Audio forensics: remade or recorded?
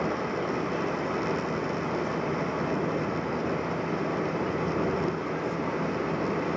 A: recorded